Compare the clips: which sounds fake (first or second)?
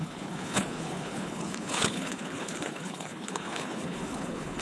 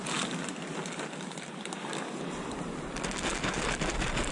first